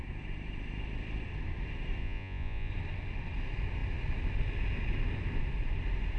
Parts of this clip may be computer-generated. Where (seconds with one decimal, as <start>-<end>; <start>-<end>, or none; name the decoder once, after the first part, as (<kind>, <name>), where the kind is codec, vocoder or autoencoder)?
2.0-2.7 (vocoder, Vocos)